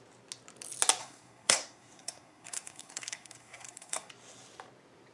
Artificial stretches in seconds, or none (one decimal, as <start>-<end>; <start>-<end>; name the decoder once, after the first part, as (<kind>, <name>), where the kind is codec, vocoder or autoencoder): 1.0-4.1 (codec, SNAC)